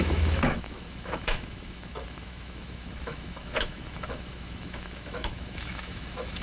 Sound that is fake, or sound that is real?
fake